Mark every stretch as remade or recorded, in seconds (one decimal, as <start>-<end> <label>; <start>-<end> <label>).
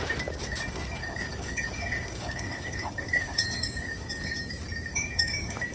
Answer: 0.0-1.0 recorded; 1.0-4.4 remade; 4.4-4.9 recorded; 4.9-5.7 remade